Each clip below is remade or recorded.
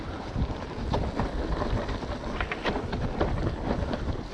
recorded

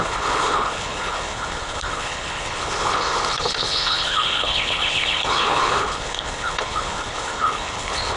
remade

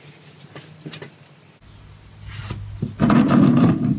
recorded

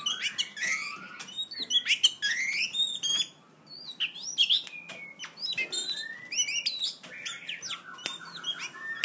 recorded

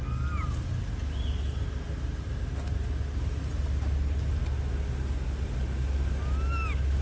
recorded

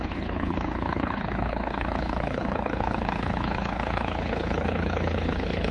remade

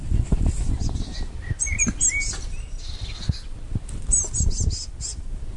recorded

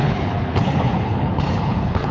remade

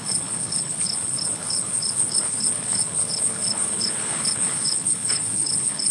remade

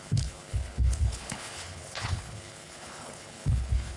remade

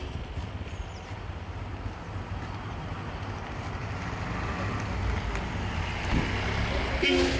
recorded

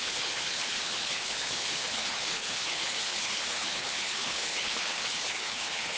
remade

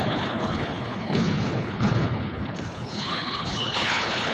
remade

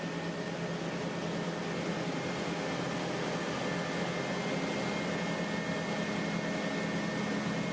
recorded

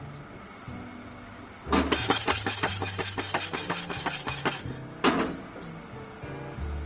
recorded